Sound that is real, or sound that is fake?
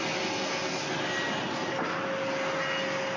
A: real